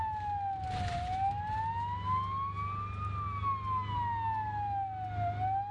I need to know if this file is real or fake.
real